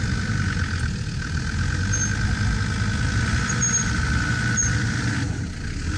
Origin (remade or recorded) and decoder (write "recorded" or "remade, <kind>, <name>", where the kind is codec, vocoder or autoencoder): recorded